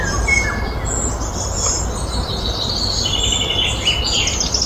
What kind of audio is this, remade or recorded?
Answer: recorded